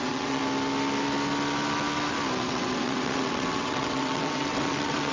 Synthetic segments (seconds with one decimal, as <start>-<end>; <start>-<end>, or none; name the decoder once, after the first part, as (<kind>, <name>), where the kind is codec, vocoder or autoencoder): 0.0-0.4 (vocoder, WaveNeXt); 2.4-5.1